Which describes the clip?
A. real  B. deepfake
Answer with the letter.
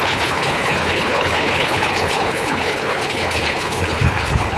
B